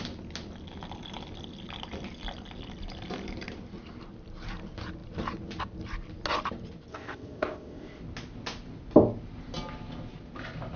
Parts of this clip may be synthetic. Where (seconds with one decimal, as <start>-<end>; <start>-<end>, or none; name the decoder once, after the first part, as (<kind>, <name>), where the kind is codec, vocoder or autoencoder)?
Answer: 6.9-8.0 (codec, ZipCodec)